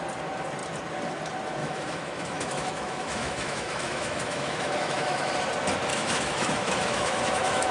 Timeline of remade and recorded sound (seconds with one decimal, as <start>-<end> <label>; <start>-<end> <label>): 0.0-1.6 recorded; 1.6-5.3 remade; 5.3-5.9 recorded; 5.9-7.7 remade